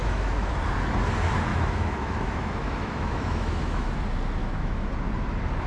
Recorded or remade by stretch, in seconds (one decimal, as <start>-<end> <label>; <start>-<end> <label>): 0.0-0.5 remade; 0.5-1.5 recorded; 1.5-3.9 remade; 3.9-4.4 recorded; 4.4-4.9 remade; 4.9-5.7 recorded